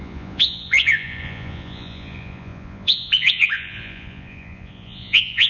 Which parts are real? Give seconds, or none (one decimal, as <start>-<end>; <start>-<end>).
none

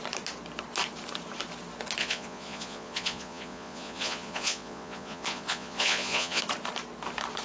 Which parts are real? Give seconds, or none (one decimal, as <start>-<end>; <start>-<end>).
0.0-2.0; 6.4-7.4